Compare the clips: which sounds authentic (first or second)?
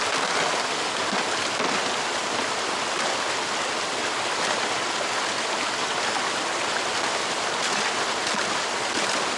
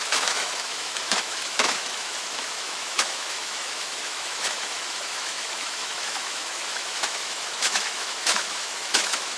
first